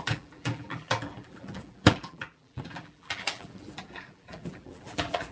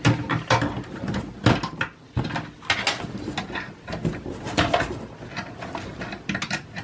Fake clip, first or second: first